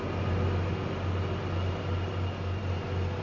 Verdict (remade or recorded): recorded